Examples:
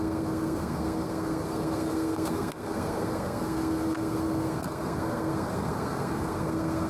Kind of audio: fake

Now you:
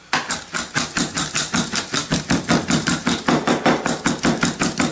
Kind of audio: real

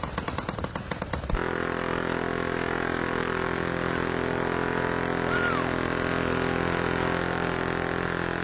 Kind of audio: real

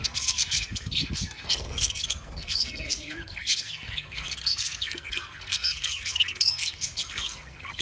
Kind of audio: fake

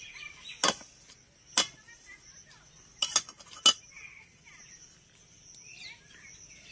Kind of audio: real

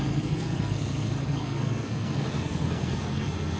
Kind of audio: fake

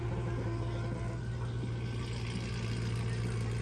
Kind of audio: real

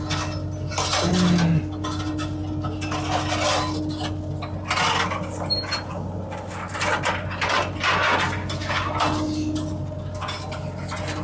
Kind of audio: real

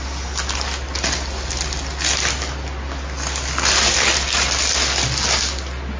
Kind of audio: real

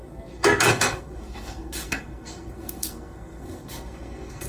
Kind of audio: fake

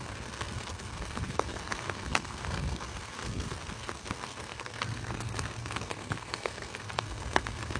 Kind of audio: fake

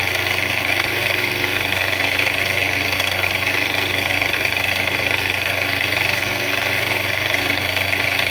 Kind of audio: fake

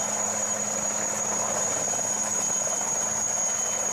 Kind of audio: real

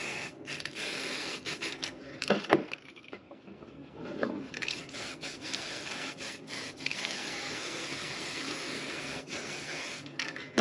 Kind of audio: fake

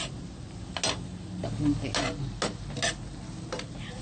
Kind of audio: real